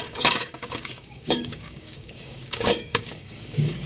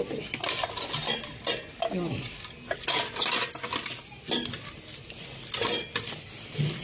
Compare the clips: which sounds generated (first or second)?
first